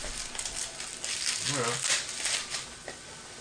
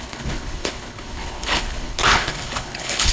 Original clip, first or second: first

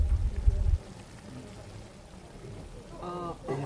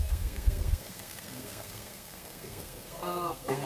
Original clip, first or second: first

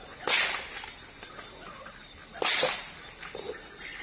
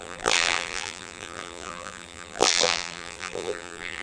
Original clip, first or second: first